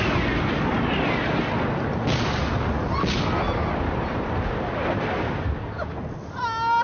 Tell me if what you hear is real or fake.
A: real